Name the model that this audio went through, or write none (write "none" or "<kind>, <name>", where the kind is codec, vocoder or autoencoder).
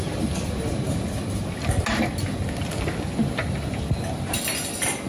none